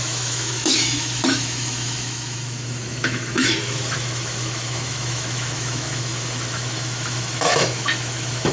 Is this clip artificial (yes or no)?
yes